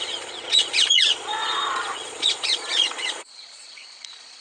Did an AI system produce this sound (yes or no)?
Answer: yes